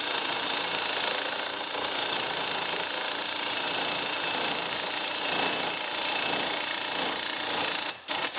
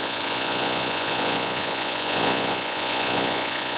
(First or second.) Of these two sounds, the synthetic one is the second